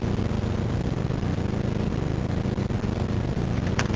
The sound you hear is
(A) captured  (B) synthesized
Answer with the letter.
A